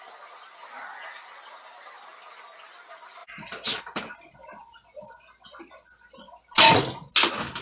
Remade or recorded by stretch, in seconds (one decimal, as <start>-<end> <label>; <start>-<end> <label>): 0.0-7.6 recorded